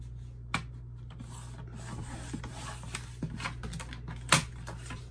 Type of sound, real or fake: real